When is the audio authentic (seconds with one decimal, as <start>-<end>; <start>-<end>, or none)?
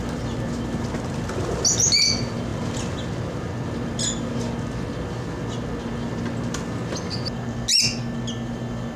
0.0-9.0